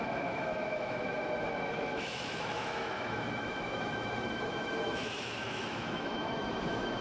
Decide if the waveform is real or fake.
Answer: fake